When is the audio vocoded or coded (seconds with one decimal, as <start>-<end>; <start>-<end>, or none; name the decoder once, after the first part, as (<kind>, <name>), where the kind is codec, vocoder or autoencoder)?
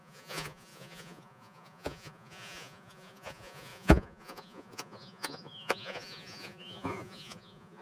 0.0-7.8 (vocoder, Vocos)